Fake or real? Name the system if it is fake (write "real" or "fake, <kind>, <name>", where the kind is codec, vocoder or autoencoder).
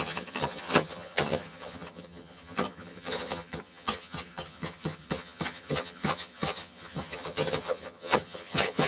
fake, vocoder, HiFi-GAN